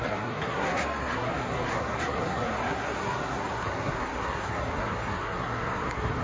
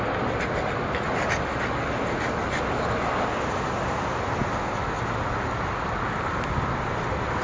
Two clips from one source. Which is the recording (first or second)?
second